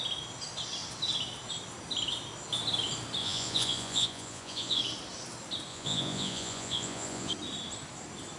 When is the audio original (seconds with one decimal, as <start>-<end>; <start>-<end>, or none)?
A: 0.0-3.2; 4.8-5.7; 7.3-8.4